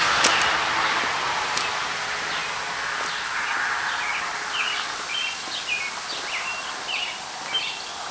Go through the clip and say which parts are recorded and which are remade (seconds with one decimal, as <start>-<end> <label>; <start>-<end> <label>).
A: 0.0-8.1 recorded